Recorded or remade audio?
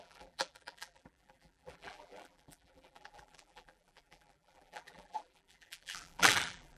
remade